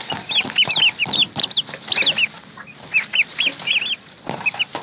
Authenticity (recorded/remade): recorded